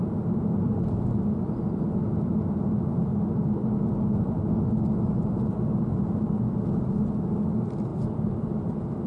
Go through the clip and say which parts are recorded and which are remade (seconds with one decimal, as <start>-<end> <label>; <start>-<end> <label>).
0.0-9.1 recorded